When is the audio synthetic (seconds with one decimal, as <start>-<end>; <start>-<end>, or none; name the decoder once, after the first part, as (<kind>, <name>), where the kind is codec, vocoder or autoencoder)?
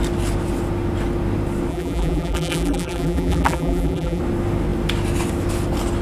1.7-4.2 (vocoder, BigVGAN v2)